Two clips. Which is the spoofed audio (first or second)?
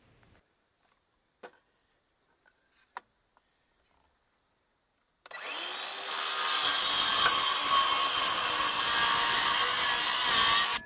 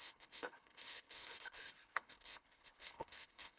second